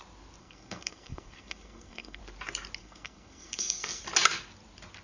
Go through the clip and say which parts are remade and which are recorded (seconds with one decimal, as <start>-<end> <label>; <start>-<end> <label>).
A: 0.0-0.4 recorded; 0.4-2.2 remade; 2.2-2.8 recorded; 2.8-4.0 remade; 4.0-5.0 recorded